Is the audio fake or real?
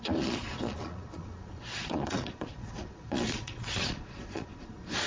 fake